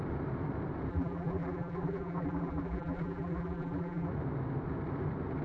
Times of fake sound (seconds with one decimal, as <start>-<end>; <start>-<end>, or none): 0.9-4.1